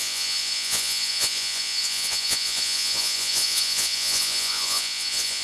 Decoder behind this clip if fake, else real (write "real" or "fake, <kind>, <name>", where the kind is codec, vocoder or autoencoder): fake, vocoder, Vocos